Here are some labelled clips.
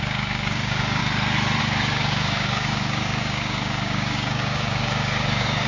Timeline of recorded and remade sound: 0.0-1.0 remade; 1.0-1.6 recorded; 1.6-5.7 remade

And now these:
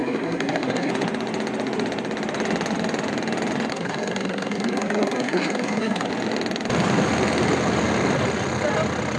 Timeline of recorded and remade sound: 0.0-0.9 remade; 0.9-3.7 recorded; 3.7-6.1 remade; 6.1-9.2 recorded

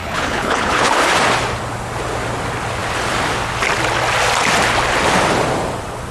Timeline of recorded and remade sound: 0.0-0.9 remade; 0.9-6.1 recorded

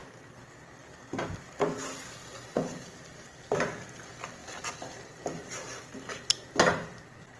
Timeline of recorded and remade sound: 0.0-7.4 recorded

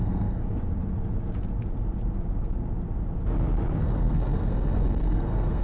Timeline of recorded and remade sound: 0.0-0.4 remade; 0.4-3.8 recorded; 3.8-5.6 remade

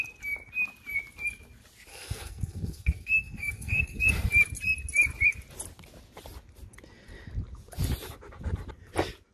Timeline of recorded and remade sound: 0.0-1.9 recorded; 1.9-4.0 remade; 4.0-9.3 recorded

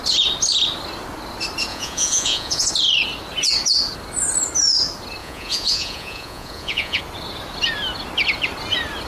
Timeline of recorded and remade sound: 0.0-1.7 recorded; 1.7-2.7 remade; 2.7-5.2 recorded; 5.2-7.0 remade; 7.0-9.1 recorded

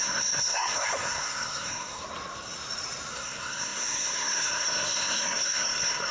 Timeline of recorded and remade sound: 0.0-2.0 remade; 2.0-3.1 recorded; 3.1-6.1 remade